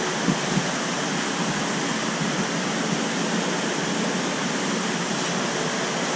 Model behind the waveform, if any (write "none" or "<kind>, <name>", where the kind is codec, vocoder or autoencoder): none